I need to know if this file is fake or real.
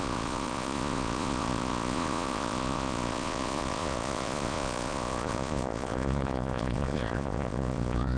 fake